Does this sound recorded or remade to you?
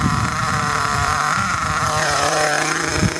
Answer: remade